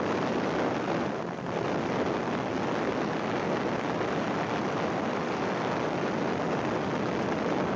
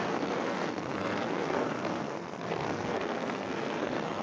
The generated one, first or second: second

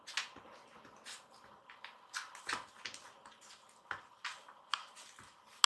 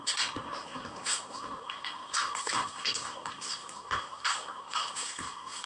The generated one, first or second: second